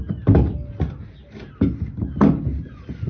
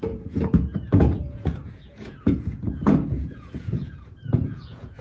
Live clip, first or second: first